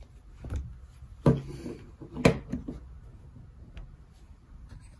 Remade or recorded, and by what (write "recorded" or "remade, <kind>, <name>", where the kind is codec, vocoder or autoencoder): recorded